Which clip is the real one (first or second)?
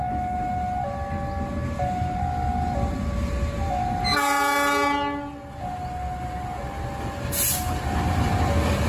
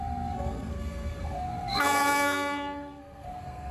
first